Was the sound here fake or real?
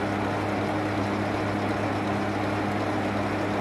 real